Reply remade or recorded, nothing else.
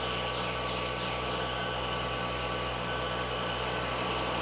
recorded